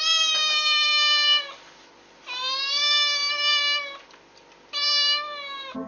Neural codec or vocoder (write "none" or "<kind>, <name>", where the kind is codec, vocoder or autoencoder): none